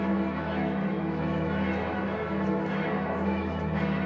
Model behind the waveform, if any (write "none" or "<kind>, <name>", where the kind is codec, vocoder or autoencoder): autoencoder, DAC-VAE